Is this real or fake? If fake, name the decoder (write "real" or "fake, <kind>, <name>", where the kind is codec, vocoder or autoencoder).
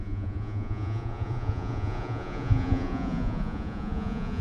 fake, vocoder, Vocos